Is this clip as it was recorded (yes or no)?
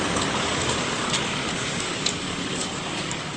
no